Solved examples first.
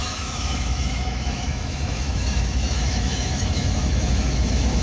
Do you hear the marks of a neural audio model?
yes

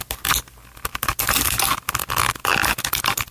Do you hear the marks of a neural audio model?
no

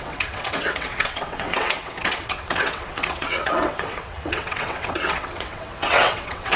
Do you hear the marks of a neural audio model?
yes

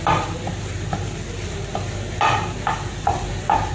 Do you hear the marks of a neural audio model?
no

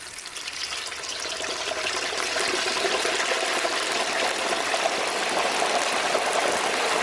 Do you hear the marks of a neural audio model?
no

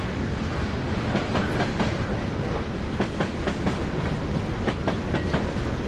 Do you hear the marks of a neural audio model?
no